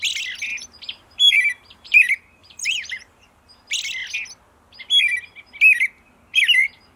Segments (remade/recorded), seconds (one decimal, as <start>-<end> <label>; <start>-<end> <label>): 0.0-0.5 recorded; 0.5-2.0 remade; 2.0-2.4 recorded; 2.4-3.4 remade; 3.4-7.0 recorded